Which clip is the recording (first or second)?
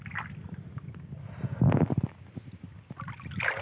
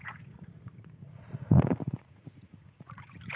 first